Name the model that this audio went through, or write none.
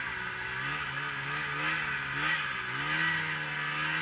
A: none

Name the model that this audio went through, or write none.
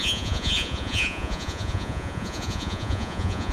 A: vocoder, Vocos